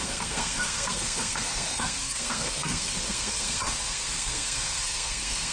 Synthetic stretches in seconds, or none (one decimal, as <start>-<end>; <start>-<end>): 0.0-5.5